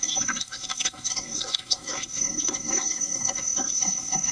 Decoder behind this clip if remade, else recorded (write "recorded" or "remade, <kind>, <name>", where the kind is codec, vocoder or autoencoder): remade, codec, SNAC